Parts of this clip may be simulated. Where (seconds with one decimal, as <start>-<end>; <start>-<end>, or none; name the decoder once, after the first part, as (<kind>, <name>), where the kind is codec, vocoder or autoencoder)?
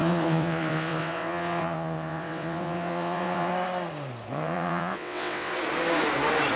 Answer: 0.0-3.5 (vocoder, WaveNeXt); 4.3-5.5